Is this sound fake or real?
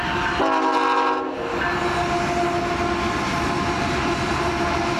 real